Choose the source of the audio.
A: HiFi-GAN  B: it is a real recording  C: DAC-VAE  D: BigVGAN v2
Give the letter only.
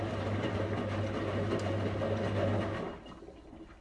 B